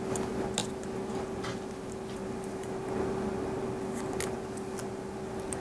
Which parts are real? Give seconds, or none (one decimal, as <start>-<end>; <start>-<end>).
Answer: 0.0-5.6